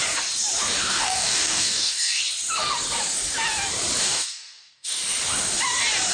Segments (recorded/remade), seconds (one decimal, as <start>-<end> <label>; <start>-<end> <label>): 0.0-0.9 recorded; 0.9-2.2 remade; 2.2-4.0 recorded; 4.0-5.0 remade; 5.0-6.1 recorded